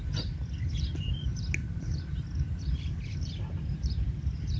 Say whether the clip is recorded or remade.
recorded